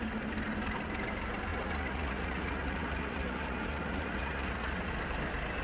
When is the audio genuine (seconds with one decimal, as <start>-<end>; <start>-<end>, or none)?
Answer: 0.0-1.5; 4.9-5.6